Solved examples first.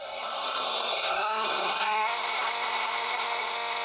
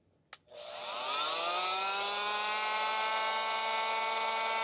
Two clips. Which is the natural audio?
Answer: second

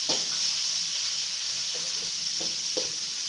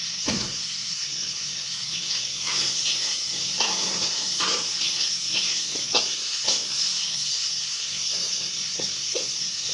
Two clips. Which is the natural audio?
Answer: first